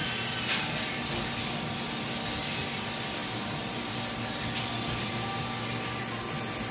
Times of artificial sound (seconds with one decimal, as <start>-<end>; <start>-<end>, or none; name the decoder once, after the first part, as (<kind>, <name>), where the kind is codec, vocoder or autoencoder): 0.0-1.1 (vocoder, BigVGAN v2); 3.2-3.8